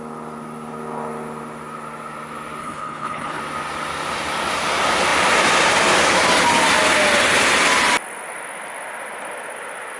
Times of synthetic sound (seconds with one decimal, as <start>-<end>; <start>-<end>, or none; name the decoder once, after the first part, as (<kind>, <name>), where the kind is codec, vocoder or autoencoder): 2.6-3.4 (codec, HILCodec)